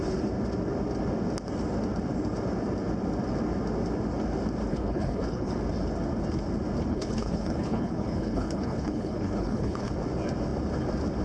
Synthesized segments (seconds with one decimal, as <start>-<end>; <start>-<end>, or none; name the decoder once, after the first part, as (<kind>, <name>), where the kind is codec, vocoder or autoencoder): 4.7-5.5 (codec, HILCodec); 6.9-9.9